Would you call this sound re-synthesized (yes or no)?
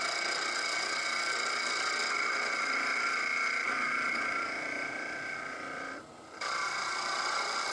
yes